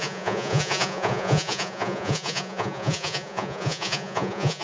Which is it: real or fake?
fake